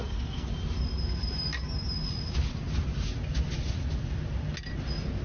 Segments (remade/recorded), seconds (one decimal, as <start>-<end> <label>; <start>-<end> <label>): 0.0-0.5 remade; 0.5-5.2 recorded